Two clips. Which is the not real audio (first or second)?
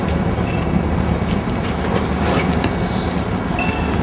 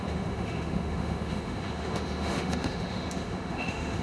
second